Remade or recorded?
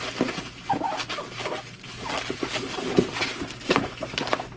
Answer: recorded